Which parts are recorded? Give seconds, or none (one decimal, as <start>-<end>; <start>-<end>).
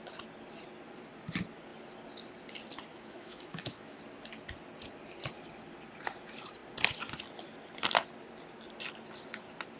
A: 0.0-2.9; 4.0-9.8